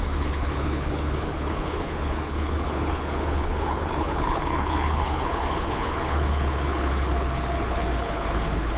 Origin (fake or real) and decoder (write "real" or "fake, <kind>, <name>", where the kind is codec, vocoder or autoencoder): fake, codec, HILCodec